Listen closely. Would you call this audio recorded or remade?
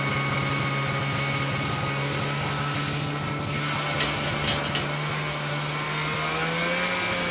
recorded